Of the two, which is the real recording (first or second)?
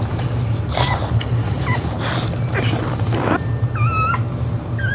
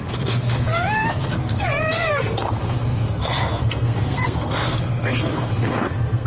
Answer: first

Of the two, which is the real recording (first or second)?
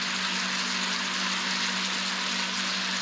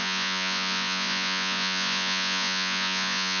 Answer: first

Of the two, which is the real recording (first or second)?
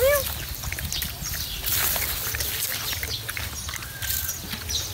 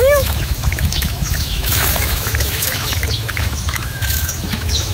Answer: first